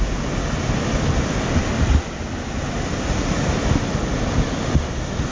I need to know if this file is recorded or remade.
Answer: recorded